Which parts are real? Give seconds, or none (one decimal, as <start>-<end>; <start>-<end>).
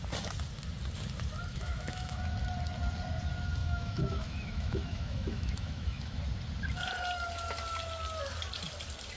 0.0-1.5; 2.2-3.6; 6.2-9.2